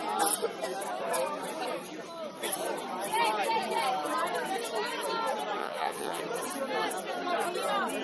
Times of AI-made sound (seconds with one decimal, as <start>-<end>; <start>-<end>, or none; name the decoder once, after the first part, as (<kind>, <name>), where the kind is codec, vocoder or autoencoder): 5.6-6.2 (vocoder, Vocos)